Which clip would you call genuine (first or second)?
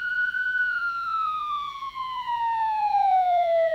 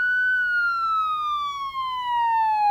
second